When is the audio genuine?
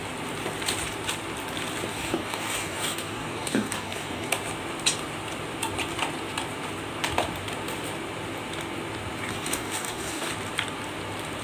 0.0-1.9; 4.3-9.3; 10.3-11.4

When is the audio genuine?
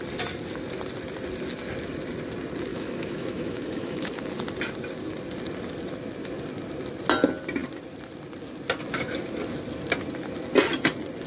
0.0-2.7; 4.1-11.3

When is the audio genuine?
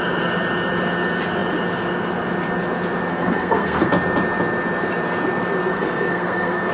0.0-3.1; 3.9-5.7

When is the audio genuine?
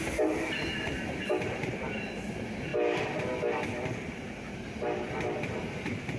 2.7-5.6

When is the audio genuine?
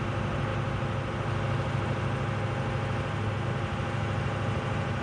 0.0-5.0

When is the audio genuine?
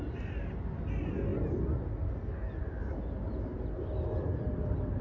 0.0-5.0